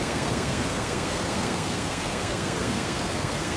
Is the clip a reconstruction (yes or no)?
yes